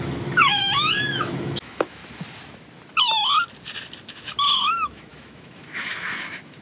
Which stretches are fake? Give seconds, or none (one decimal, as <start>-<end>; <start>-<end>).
0.0-2.0; 4.1-6.6